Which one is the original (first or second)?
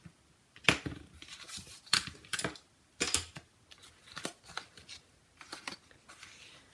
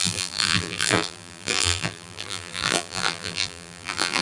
first